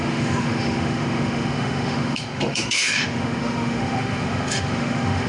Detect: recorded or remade remade